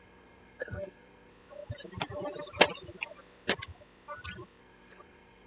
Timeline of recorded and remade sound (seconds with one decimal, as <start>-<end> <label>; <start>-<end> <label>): 0.0-1.3 remade; 1.3-4.6 recorded; 4.6-5.5 remade

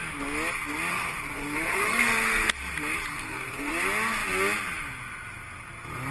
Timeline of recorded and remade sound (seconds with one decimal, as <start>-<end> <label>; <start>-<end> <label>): 0.0-0.9 recorded; 0.9-2.5 remade; 2.5-3.1 recorded; 3.1-3.7 remade; 3.7-6.1 recorded

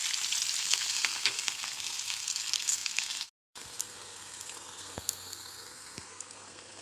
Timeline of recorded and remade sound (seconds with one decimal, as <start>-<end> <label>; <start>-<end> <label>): 0.0-0.6 recorded; 0.6-6.8 remade

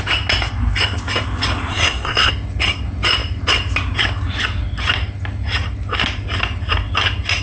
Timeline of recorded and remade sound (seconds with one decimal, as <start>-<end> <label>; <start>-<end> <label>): 0.0-1.7 recorded; 1.7-2.3 remade; 2.3-7.4 recorded

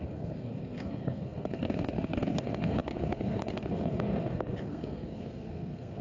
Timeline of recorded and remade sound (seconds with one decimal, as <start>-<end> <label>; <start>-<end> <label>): 0.0-6.0 remade

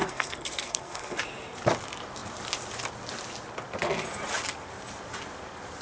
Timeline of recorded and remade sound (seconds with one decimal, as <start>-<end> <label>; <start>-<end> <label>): 0.0-1.2 remade; 1.2-5.8 recorded